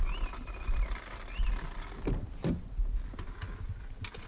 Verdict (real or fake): real